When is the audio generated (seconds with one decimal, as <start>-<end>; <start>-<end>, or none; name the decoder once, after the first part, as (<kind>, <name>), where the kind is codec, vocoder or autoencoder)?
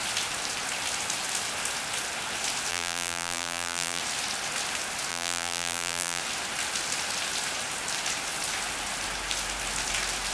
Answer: 2.7-4.0 (vocoder, BigVGAN v2); 5.1-6.2